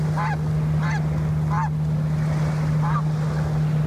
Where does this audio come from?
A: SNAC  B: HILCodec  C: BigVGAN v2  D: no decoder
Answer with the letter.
D